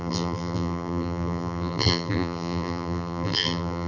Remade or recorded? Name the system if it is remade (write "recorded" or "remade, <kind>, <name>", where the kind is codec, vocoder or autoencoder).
remade, vocoder, BigVGAN v2